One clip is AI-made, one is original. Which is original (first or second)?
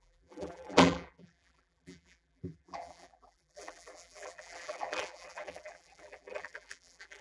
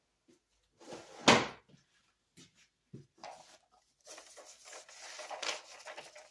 second